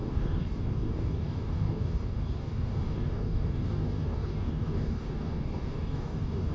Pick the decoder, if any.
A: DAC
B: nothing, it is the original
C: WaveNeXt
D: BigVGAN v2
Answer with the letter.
A